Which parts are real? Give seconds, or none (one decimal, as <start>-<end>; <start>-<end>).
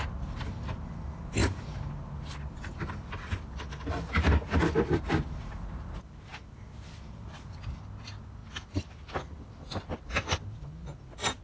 0.0-11.4